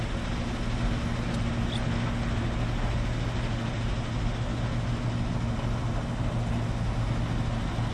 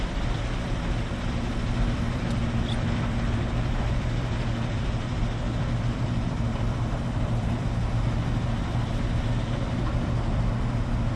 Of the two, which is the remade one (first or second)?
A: second